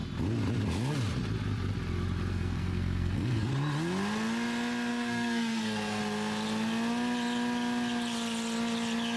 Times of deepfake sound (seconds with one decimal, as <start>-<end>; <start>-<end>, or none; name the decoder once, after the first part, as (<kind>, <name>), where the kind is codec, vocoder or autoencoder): 2.3-3.5 (codec, SNAC); 4.9-6.0